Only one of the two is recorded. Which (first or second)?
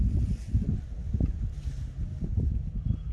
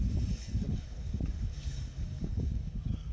first